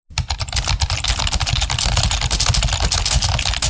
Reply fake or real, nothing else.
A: real